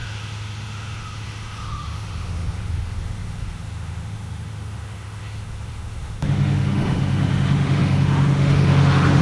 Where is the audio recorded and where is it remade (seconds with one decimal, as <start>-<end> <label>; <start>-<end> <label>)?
0.0-9.2 remade